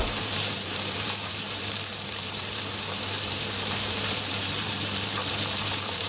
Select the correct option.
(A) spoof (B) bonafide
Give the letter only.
A